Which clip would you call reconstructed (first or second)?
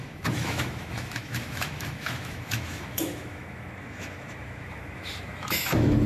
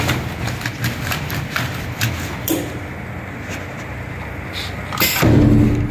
first